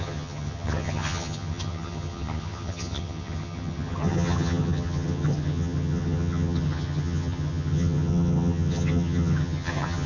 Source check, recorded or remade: remade